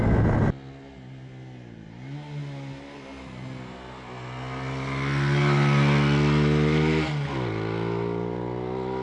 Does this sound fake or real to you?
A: real